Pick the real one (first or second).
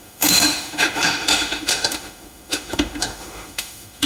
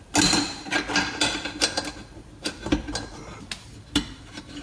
second